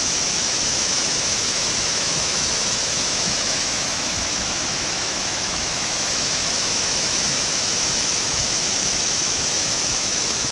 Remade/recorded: remade